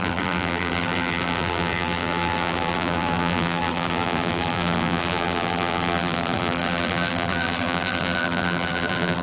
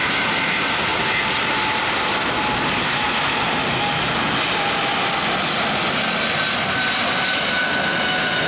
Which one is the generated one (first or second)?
first